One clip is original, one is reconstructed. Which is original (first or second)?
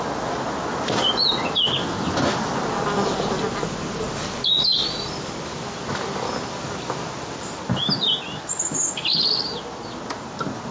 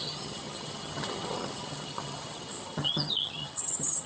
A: first